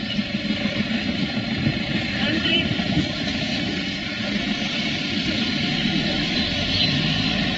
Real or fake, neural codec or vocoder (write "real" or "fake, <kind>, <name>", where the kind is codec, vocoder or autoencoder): fake, vocoder, BigVGAN v2